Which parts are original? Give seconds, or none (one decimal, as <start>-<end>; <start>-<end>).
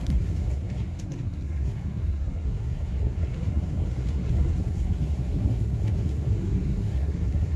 none